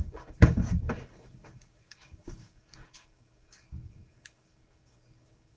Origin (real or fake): fake